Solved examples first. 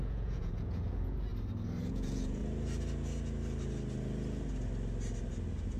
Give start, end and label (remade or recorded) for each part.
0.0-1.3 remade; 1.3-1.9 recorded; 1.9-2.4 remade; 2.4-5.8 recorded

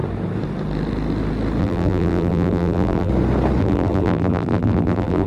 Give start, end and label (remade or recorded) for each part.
0.0-1.6 recorded; 1.6-3.1 remade; 3.1-3.6 recorded; 3.6-5.3 remade

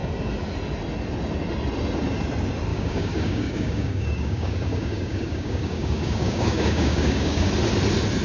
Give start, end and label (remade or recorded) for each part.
0.0-2.7 recorded; 2.7-7.5 remade; 7.5-8.2 recorded